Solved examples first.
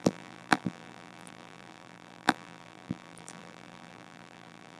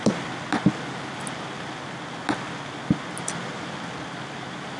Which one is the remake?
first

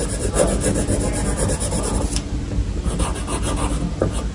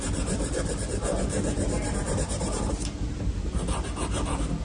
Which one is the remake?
second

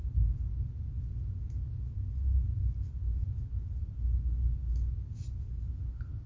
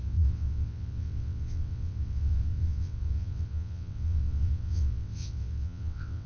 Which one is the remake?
second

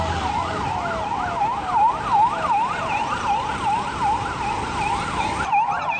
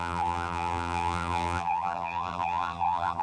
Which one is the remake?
second